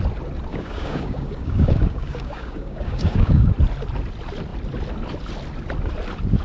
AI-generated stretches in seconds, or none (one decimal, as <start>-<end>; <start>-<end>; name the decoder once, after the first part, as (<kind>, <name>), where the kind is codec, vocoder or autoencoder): 0.5-3.5 (codec, DAC)